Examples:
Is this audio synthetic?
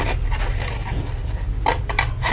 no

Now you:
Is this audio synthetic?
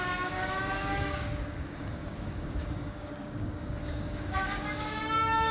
yes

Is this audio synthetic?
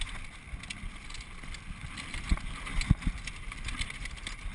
no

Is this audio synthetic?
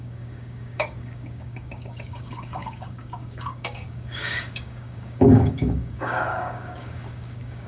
yes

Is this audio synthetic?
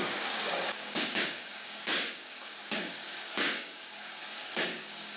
yes